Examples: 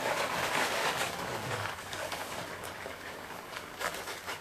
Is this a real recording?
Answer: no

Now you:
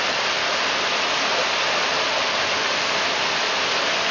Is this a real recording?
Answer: yes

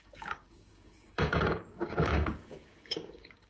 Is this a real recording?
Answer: no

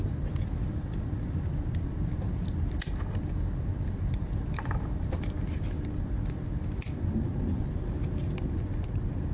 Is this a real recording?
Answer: yes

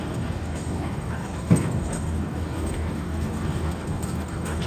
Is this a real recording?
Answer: no